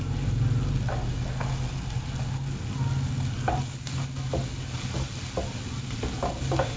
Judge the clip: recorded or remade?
recorded